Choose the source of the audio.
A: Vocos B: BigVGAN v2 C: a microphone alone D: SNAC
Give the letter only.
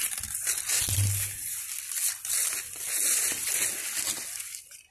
C